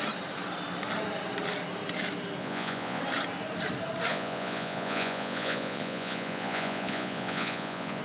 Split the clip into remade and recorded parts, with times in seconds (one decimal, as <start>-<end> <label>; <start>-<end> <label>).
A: 0.0-2.4 recorded; 2.4-3.0 remade; 3.0-4.1 recorded; 4.1-8.0 remade